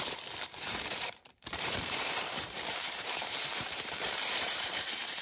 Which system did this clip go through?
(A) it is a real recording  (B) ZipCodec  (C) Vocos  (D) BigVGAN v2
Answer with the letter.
D